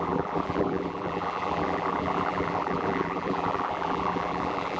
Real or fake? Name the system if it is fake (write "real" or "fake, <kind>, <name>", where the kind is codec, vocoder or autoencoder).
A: fake, vocoder, BigVGAN v2